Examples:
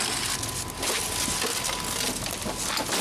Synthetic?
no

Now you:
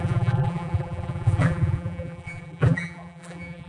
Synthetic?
yes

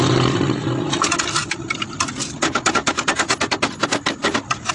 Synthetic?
yes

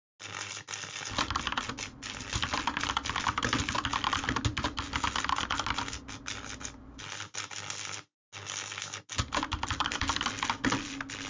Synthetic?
no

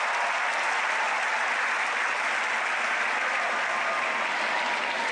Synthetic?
no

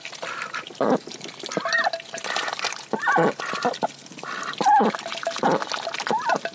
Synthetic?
no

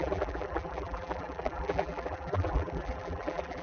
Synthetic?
yes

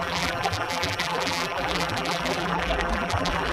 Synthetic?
yes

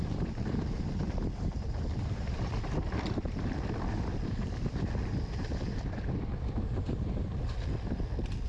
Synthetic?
yes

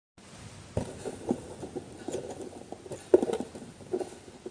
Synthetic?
no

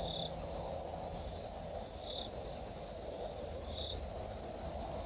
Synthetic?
no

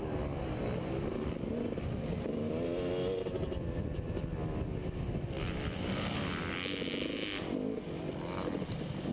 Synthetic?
no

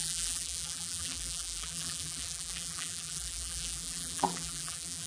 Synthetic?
yes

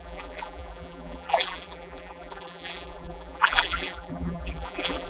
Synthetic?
yes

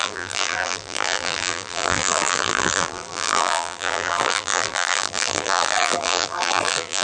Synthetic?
yes